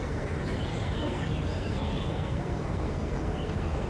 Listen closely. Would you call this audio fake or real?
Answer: fake